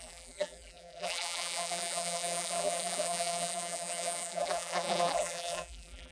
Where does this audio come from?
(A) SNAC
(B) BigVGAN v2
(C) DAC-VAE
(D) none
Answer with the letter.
B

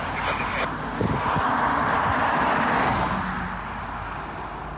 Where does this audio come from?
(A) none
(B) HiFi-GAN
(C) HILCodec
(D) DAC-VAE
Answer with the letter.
A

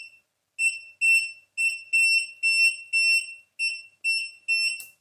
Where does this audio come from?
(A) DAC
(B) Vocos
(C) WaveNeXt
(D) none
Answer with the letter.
D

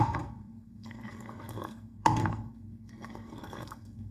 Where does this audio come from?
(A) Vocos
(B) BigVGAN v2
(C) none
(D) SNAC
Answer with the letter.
D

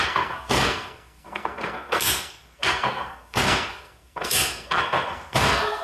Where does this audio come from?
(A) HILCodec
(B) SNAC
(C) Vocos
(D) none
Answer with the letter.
B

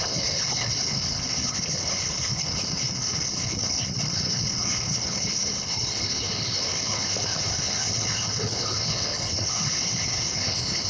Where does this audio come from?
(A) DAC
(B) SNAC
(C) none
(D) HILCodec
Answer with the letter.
D